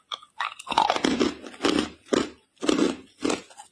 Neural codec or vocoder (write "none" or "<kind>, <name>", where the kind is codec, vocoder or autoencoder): none